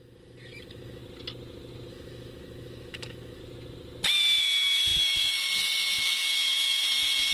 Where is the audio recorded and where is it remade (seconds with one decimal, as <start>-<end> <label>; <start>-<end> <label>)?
0.0-1.0 remade; 1.0-1.9 recorded; 1.9-3.4 remade; 3.4-4.4 recorded; 4.4-7.3 remade

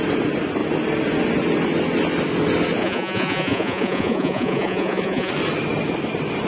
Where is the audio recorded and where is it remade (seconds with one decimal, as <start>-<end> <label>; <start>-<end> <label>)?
0.0-2.8 recorded; 2.8-5.3 remade; 5.3-6.5 recorded